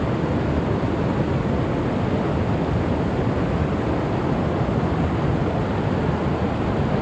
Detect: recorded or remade recorded